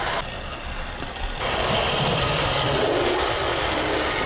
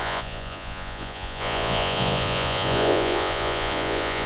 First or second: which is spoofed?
second